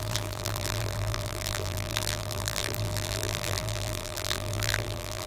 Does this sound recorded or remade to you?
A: remade